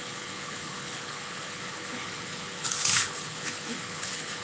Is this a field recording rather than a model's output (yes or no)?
no